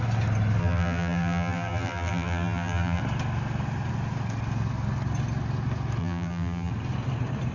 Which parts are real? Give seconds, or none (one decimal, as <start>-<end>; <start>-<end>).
0.0-0.6; 3.0-6.0; 6.7-7.5